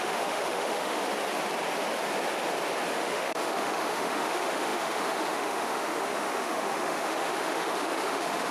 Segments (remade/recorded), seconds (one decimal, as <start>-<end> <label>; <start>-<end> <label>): 0.0-1.0 remade; 1.0-2.9 recorded; 2.9-8.5 remade